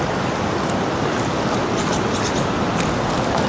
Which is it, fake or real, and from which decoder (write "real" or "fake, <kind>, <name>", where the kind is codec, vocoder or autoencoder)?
real